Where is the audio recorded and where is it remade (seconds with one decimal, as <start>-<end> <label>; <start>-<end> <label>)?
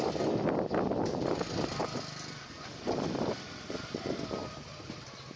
0.0-1.8 recorded; 1.8-5.0 remade; 5.0-5.4 recorded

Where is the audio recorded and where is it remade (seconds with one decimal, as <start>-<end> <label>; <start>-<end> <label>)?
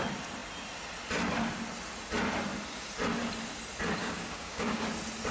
0.0-4.0 recorded; 4.0-4.8 remade; 4.8-5.3 recorded